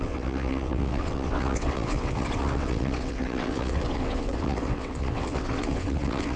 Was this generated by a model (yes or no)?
yes